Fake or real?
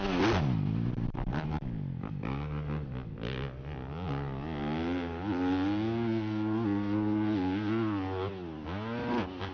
real